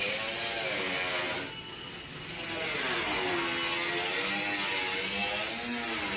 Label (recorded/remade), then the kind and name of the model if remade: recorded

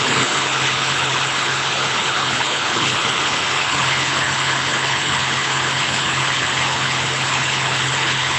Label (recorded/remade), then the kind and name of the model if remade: remade, codec, HILCodec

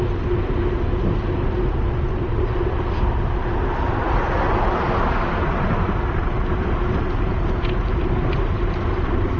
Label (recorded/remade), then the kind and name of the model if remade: recorded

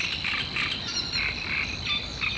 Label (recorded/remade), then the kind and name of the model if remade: recorded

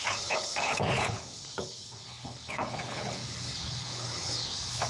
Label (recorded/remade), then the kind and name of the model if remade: remade, codec, HILCodec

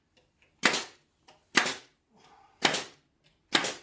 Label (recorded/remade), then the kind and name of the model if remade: recorded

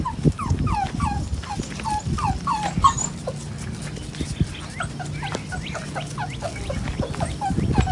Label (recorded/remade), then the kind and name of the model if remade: recorded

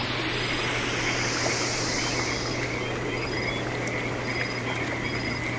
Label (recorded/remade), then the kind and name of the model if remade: recorded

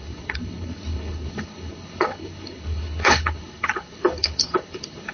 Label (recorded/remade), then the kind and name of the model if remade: remade, codec, HILCodec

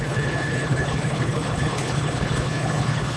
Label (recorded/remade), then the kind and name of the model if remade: remade, codec, HILCodec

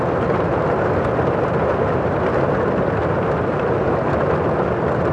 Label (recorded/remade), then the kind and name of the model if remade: recorded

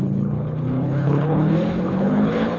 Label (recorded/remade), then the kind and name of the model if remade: remade, codec, HILCodec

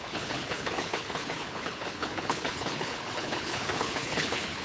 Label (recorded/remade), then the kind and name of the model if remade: remade, codec, HILCodec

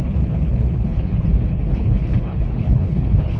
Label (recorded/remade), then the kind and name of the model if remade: remade, codec, HILCodec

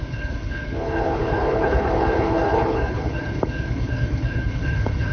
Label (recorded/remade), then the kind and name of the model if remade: remade, codec, HILCodec